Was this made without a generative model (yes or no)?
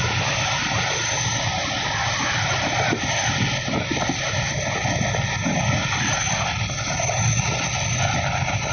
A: yes